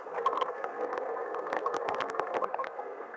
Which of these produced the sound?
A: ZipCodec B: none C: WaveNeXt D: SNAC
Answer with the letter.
D